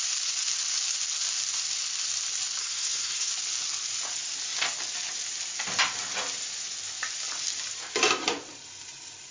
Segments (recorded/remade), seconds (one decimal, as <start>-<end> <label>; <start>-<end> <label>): 0.0-2.6 recorded; 2.6-3.3 remade; 3.3-9.3 recorded